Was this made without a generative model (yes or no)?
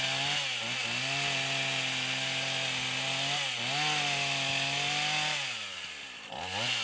yes